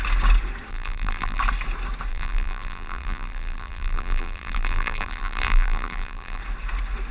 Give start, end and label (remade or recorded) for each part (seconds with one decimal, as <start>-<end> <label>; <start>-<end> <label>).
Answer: 0.0-0.7 recorded; 0.7-1.4 remade; 1.4-2.1 recorded; 2.1-6.4 remade; 6.4-7.1 recorded